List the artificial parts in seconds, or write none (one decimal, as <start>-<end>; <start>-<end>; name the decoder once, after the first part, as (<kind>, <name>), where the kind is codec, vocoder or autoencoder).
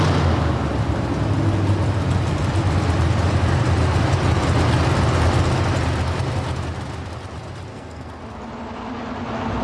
7.7-8.2 (codec, SNAC)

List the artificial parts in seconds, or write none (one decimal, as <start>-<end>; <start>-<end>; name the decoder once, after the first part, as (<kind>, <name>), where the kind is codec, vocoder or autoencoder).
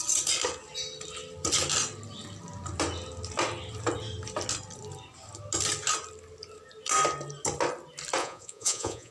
8.2-9.1 (vocoder, Vocos)